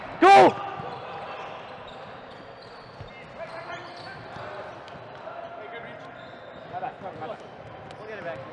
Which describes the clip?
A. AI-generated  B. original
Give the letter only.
B